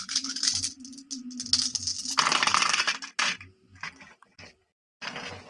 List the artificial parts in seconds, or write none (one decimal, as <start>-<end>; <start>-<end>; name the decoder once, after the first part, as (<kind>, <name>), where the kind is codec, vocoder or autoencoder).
none